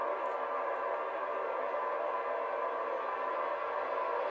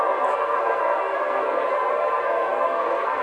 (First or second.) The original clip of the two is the first